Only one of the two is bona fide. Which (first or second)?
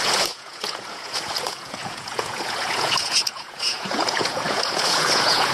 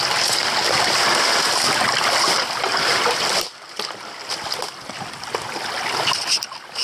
second